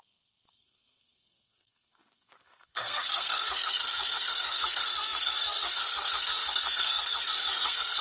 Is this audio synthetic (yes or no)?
yes